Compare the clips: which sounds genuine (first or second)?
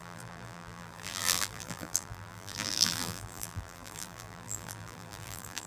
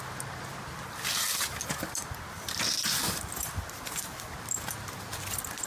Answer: second